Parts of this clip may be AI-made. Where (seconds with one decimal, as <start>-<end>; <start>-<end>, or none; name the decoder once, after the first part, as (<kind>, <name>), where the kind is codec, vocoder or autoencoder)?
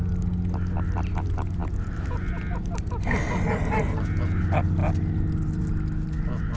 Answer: none